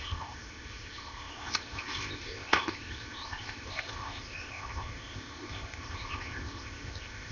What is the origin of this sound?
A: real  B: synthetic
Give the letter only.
B